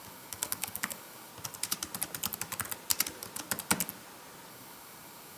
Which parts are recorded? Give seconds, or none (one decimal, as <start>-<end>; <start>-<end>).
1.3-4.5